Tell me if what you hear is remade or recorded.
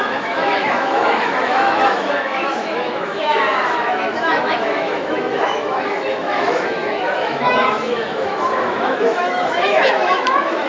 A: remade